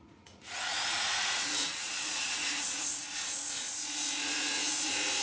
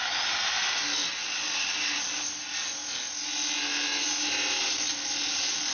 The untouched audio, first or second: second